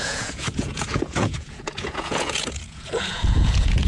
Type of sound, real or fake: fake